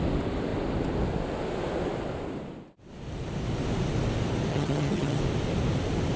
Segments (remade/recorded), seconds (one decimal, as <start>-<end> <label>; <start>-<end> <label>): 0.0-4.5 recorded; 4.5-5.2 remade; 5.2-6.2 recorded